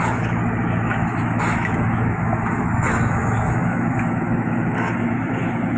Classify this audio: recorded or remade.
remade